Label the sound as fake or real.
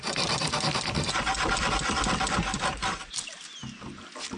real